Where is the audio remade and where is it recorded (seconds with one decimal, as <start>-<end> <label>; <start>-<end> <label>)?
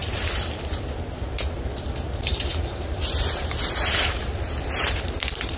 0.0-2.3 recorded; 2.3-5.6 remade